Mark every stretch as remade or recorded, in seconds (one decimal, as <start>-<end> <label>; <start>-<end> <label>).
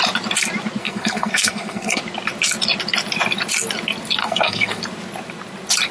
0.0-0.8 recorded; 0.8-2.0 remade; 2.0-4.2 recorded; 4.2-4.8 remade; 4.8-5.9 recorded